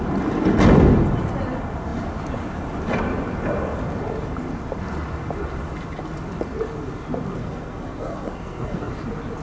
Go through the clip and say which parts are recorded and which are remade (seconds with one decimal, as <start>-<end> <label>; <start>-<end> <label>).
0.0-7.4 recorded; 7.4-8.9 remade; 8.9-9.4 recorded

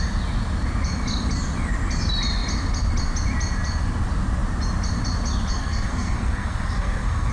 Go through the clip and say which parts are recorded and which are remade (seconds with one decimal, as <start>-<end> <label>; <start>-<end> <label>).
0.0-5.5 recorded; 5.5-7.3 remade

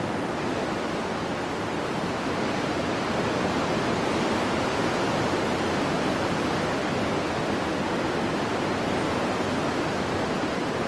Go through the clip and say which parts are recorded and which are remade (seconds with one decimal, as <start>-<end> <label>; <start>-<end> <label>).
0.0-10.9 recorded